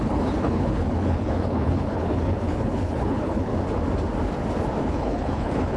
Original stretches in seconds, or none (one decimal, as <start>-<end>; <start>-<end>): 3.5-4.8